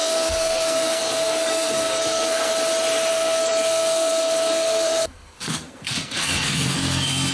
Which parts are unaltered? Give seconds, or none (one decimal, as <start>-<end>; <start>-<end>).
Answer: 2.5-3.1